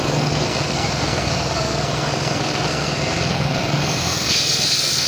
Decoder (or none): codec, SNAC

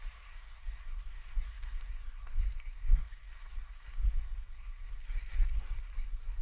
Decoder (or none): codec, SNAC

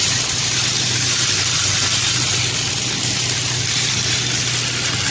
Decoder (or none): none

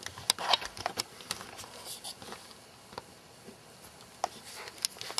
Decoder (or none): none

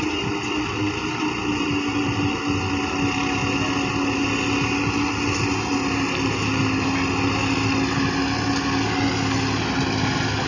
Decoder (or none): none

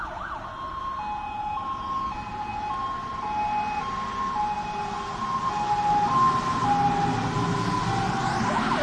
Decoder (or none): none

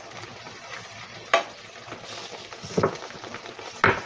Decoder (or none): none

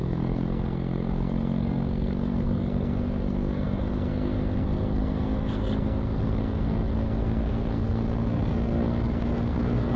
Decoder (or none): codec, SNAC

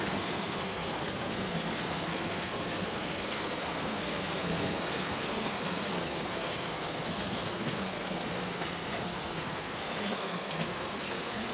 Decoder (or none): codec, SNAC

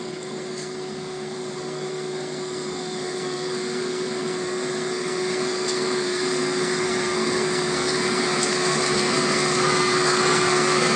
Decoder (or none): codec, SNAC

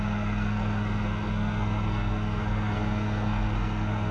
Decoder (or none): codec, SNAC